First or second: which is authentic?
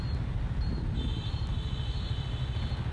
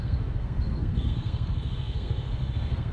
first